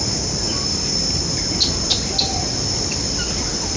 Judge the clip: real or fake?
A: real